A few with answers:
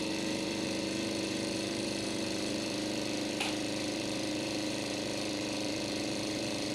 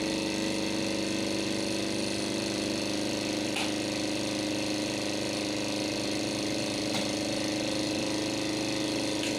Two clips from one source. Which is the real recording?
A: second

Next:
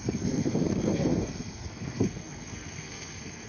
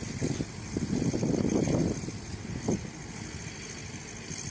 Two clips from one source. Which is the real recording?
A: second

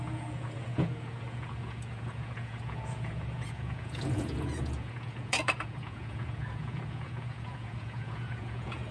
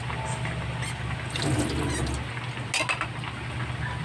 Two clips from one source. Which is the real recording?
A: second